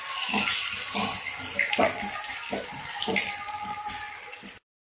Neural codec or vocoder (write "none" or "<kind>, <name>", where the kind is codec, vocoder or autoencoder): none